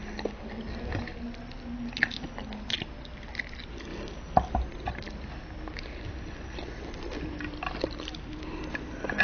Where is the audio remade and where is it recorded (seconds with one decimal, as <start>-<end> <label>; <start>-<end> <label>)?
0.0-9.2 recorded